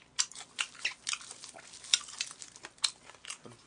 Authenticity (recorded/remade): recorded